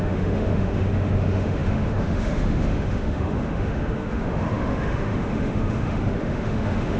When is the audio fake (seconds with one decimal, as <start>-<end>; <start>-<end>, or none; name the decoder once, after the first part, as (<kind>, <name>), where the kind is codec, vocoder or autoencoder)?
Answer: 0.0-7.0 (autoencoder, DAC-VAE)